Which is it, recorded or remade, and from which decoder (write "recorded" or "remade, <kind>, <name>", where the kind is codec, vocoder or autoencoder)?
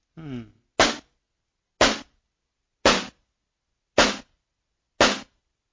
recorded